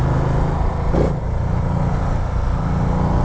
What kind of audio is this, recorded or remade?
recorded